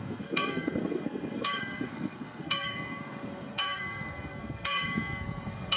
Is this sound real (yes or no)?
no